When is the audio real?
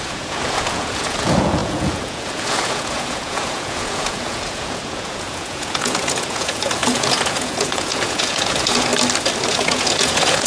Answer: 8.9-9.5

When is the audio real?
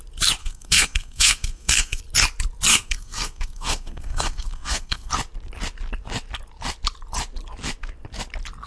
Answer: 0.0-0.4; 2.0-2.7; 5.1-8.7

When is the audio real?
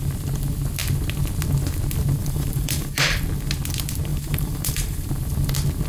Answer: 0.0-2.2; 3.2-4.1; 5.1-5.9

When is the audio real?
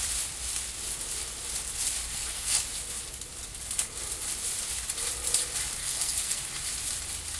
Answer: 0.0-2.1; 2.6-5.8; 6.4-7.4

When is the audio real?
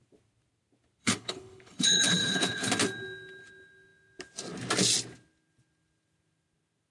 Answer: 0.0-1.0; 2.7-6.9